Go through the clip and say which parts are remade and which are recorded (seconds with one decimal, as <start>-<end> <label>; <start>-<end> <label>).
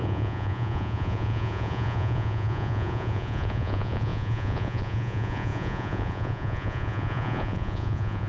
0.0-8.3 remade